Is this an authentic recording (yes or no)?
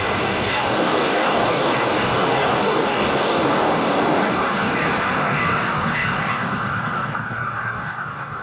no